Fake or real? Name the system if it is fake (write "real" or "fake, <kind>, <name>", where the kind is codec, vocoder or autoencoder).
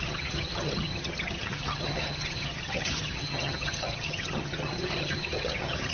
fake, vocoder, HiFi-GAN